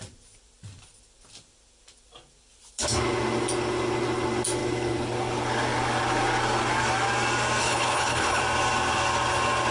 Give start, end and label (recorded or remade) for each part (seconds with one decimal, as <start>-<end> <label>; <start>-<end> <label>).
0.0-7.6 recorded; 7.6-8.4 remade; 8.4-9.7 recorded